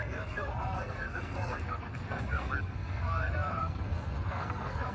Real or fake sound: fake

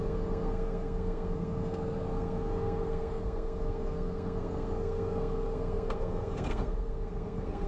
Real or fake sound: fake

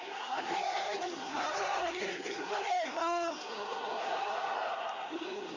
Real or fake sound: fake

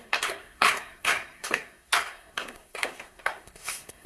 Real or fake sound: fake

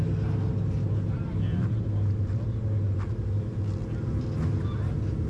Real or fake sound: real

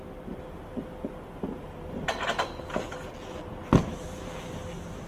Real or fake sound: real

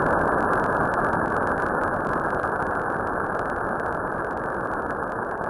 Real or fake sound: real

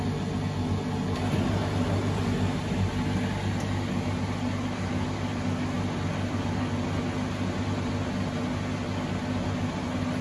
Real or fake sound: real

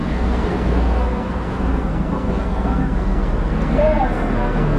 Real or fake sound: fake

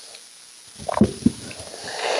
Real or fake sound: real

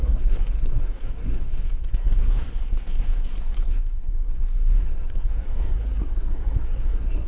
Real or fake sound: fake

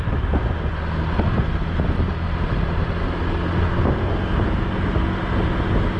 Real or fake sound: real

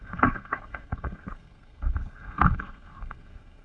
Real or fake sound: fake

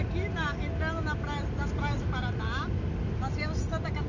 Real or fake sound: real